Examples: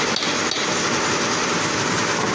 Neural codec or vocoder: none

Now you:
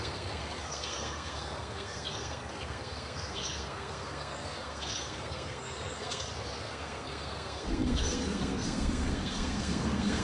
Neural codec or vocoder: codec, SNAC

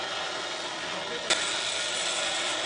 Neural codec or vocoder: none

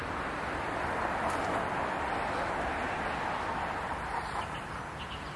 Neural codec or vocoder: none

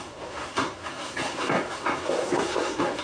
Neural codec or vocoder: codec, SNAC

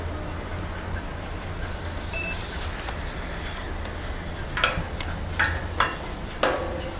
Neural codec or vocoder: none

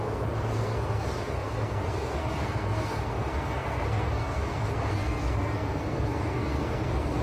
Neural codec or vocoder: codec, SNAC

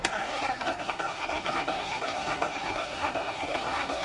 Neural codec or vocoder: codec, SNAC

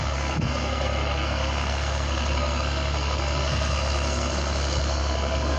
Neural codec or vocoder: codec, SNAC